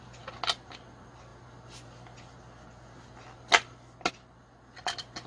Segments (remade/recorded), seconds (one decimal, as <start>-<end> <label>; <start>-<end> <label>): 0.0-5.3 recorded

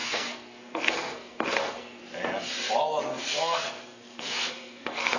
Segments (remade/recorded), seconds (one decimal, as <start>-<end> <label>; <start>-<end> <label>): 0.0-2.0 remade; 2.0-3.1 recorded; 3.1-5.2 remade

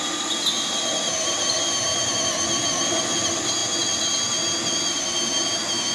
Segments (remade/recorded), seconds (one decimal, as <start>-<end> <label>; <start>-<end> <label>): 0.0-5.9 recorded

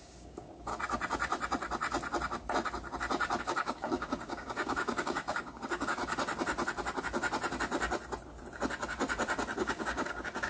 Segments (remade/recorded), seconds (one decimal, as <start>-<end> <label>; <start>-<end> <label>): 0.0-0.7 remade; 0.7-3.4 recorded; 3.4-6.0 remade; 6.0-9.6 recorded; 9.6-10.5 remade

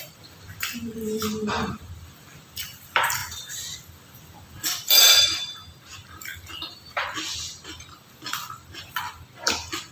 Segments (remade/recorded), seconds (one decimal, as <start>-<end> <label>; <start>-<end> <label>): 0.0-0.9 remade; 0.9-1.7 recorded; 1.7-9.9 remade

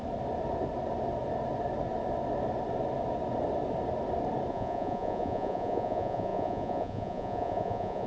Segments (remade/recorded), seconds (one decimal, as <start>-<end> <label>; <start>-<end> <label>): 0.0-4.5 recorded; 4.5-8.1 remade

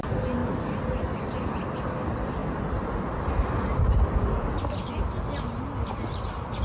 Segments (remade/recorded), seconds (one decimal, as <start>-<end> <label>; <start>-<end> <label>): 0.0-6.6 recorded